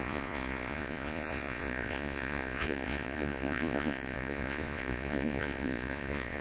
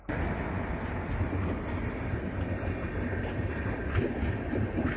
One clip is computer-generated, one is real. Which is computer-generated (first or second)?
first